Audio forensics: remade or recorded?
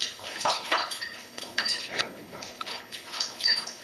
remade